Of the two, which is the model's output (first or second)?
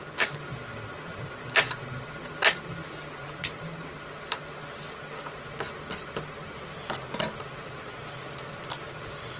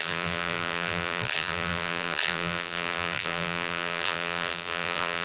second